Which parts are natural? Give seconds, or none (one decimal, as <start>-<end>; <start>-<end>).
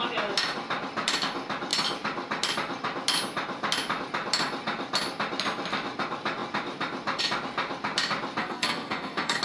0.0-8.4